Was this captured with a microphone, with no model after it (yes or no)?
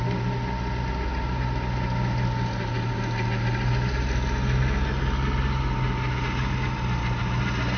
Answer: yes